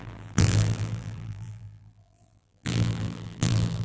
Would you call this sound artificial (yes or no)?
yes